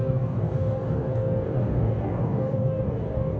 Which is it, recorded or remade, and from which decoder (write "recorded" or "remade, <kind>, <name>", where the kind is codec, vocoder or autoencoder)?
remade, codec, DAC